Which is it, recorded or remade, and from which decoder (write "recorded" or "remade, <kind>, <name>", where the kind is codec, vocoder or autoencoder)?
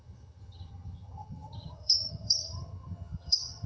remade, vocoder, HiFi-GAN